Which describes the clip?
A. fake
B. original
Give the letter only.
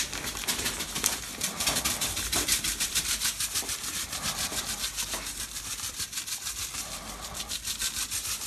A